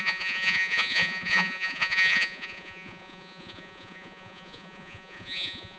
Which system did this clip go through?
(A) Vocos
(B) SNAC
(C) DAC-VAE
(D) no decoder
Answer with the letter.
A